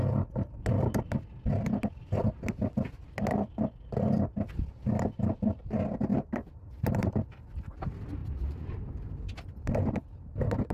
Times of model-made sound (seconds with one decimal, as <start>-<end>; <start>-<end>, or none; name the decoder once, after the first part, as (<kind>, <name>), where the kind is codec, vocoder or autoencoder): 6.1-7.5 (vocoder, BigVGAN v2); 8.2-9.1